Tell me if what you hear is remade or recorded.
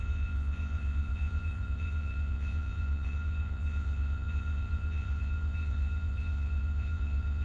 remade